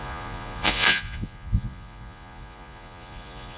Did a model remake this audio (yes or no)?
yes